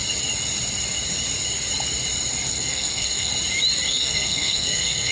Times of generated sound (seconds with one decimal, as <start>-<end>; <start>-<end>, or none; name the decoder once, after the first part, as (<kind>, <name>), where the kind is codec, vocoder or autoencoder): 2.5-3.3 (codec, SNAC); 3.9-5.1